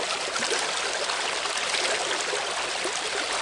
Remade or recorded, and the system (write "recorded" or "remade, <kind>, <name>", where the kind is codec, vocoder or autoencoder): recorded